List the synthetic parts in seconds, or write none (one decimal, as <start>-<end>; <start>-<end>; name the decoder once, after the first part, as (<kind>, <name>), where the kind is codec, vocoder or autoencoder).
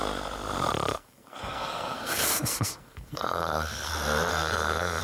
0.9-3.9 (codec, SNAC); 4.3-5.0